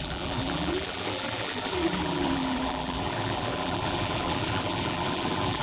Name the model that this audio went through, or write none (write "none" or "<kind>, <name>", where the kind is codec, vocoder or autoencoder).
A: vocoder, BigVGAN v2